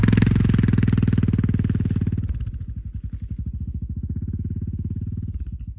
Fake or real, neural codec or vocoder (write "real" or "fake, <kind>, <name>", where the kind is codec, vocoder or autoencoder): real